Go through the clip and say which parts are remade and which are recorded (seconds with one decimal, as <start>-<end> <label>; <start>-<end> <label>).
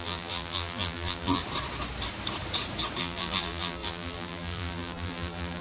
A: 0.0-1.4 remade; 1.4-3.0 recorded; 3.0-5.6 remade